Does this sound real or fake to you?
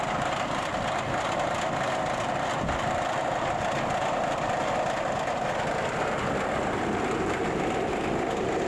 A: real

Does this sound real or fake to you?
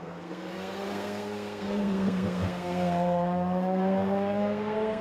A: fake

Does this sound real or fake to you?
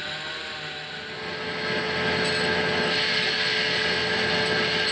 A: real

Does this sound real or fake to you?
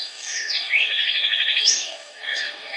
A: fake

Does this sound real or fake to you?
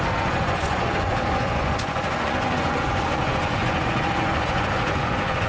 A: fake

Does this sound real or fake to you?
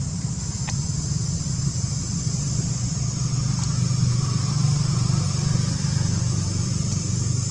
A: real